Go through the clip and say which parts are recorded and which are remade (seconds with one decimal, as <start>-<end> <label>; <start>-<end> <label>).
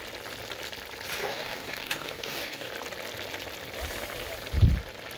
0.0-1.2 recorded; 1.2-2.7 remade; 2.7-5.2 recorded